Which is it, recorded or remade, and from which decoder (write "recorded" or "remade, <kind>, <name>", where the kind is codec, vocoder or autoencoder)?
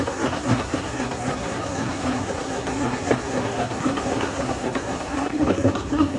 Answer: remade, codec, SNAC